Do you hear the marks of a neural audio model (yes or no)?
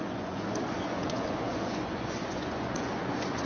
yes